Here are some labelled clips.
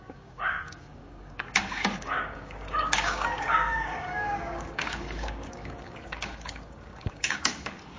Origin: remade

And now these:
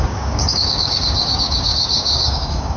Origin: remade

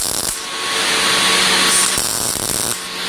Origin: recorded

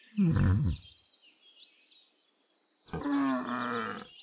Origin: recorded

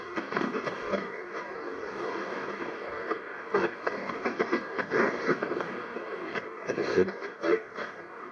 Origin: remade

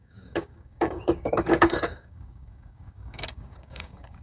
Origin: remade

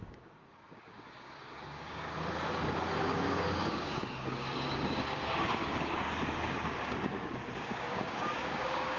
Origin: remade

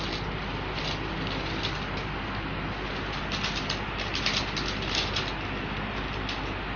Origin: recorded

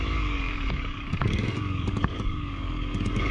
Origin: remade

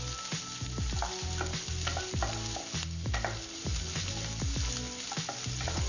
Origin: recorded